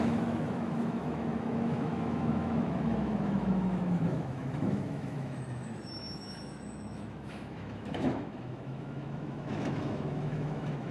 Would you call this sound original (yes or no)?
no